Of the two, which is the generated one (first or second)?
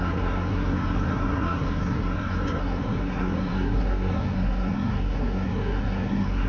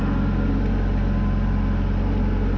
first